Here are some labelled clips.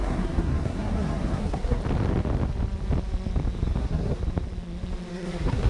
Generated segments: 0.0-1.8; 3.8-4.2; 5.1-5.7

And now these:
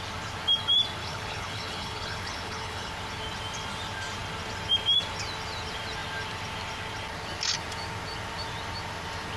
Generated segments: 1.0-2.9

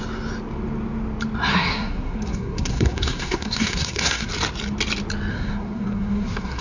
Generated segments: 1.5-4.3; 5.3-6.6

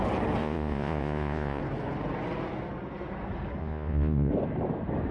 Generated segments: 0.4-1.6; 3.6-4.3

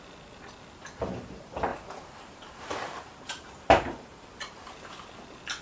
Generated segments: 1.7-5.1

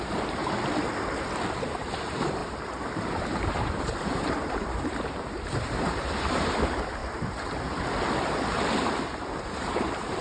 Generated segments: 0.0-0.4; 1.7-7.0; 9.4-10.2

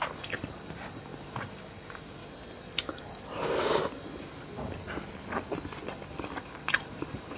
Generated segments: 0.0-2.2; 6.4-7.4